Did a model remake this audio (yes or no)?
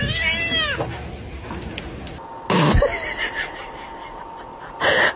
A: no